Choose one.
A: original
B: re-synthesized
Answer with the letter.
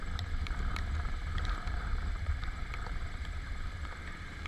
B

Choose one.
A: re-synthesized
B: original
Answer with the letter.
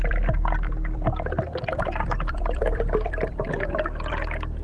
A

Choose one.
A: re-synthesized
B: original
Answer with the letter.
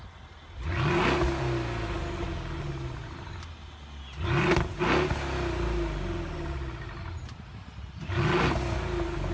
B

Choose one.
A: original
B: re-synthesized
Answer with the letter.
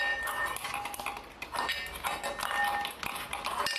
A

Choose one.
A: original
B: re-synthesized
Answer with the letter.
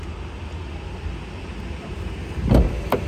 A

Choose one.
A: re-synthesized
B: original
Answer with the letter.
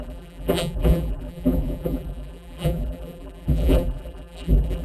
A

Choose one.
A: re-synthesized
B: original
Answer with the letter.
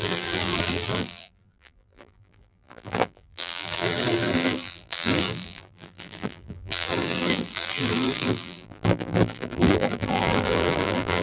A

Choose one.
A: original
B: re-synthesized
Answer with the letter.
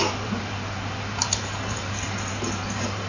B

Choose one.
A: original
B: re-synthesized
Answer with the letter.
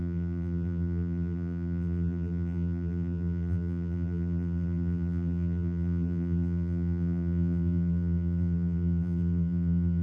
B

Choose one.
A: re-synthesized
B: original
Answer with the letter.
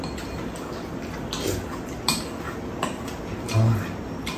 B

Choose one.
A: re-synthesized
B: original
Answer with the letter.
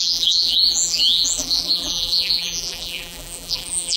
A